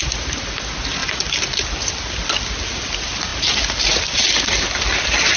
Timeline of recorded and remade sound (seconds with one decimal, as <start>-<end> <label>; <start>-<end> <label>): 0.0-5.4 recorded